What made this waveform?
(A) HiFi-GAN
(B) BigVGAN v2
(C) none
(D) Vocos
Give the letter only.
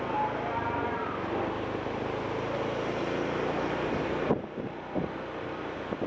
C